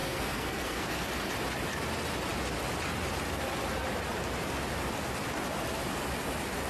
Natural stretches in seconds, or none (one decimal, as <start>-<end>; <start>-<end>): 1.1-6.7